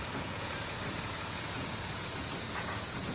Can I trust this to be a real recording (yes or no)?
no